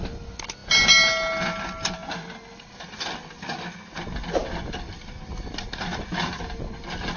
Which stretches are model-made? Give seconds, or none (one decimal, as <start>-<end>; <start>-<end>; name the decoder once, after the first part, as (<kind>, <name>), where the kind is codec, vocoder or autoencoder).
none

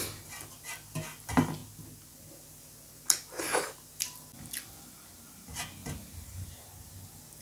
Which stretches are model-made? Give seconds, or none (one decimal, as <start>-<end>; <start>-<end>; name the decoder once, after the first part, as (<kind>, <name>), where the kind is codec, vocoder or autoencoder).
5.8-6.6 (vocoder, BigVGAN v2)

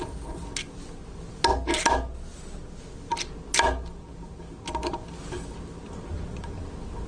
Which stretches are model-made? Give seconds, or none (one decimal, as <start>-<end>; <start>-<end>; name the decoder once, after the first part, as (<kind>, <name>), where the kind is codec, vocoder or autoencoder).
none

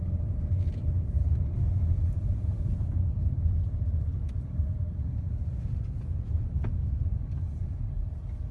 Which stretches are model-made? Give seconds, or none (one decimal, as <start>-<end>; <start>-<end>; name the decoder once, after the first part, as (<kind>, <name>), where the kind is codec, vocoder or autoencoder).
2.3-2.9 (vocoder, Vocos); 5.5-7.0